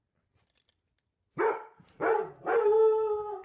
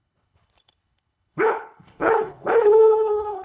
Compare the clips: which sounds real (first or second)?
first